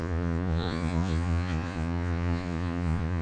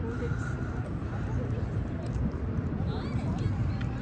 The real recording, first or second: second